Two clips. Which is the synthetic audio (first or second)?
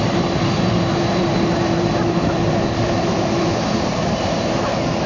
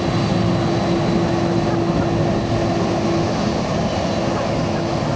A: first